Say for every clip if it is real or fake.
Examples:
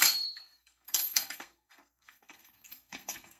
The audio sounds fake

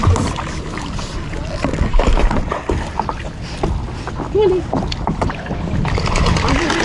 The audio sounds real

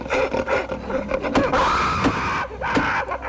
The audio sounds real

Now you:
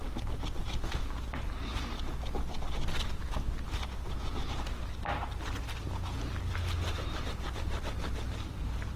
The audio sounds real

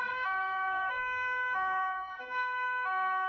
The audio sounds fake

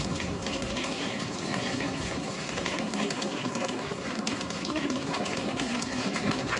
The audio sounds fake